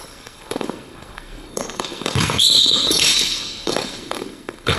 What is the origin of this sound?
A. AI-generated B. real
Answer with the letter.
A